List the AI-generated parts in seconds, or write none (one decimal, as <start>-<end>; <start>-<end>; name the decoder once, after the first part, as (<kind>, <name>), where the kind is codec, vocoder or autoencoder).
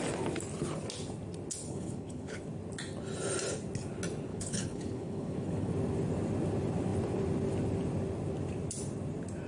1.6-2.4 (codec, HILCodec); 4.3-5.7